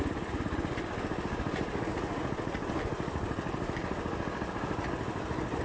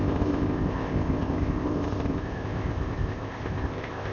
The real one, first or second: first